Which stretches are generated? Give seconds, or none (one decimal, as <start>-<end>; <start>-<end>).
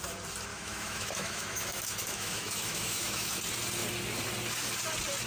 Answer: 0.5-3.4